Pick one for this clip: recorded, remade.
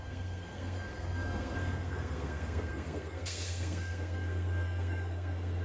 remade